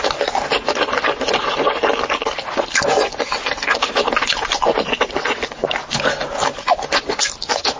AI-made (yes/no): no